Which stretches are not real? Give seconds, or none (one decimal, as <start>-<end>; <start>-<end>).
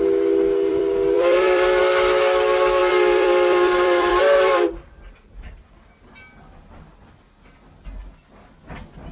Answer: 0.7-1.8; 2.8-5.6